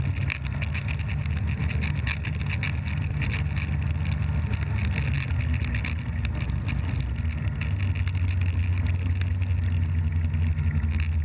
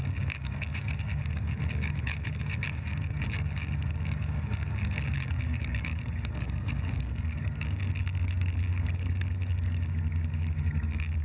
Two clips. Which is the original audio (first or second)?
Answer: first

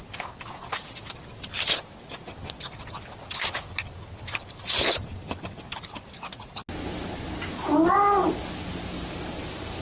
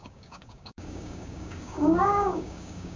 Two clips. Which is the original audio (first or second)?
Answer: first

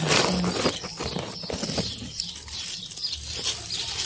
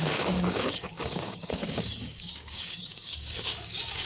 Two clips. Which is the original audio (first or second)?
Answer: first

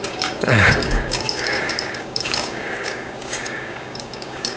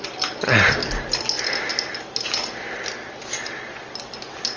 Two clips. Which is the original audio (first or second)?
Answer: second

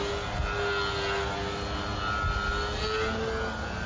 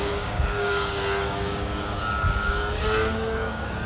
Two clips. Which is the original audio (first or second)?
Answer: first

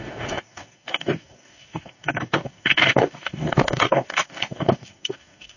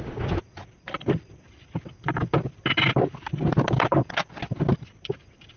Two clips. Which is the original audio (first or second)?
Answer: second